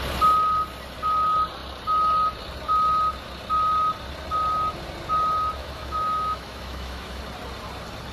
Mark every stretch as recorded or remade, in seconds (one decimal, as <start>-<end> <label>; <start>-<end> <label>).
0.0-5.6 recorded; 5.6-7.2 remade; 7.2-8.1 recorded